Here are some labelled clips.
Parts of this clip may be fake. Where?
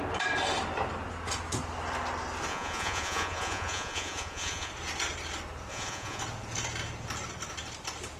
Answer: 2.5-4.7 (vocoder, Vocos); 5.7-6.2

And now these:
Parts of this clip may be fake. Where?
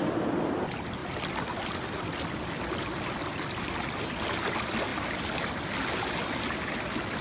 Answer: none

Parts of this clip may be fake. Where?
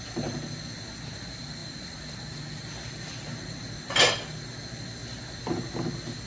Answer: none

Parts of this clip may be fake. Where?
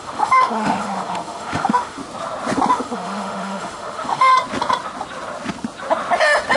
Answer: 0.0-2.0 (autoencoder, DAC-VAE); 2.7-4.3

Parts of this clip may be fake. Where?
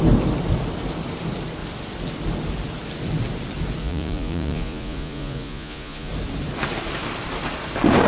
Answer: 3.8-6.1 (vocoder, Vocos)